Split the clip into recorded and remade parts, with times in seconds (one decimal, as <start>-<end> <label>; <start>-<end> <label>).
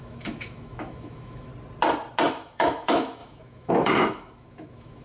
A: 0.0-1.5 remade; 1.5-2.3 recorded; 2.3-5.0 remade